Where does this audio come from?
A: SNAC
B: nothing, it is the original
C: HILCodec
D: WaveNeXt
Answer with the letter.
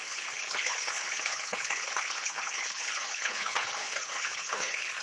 C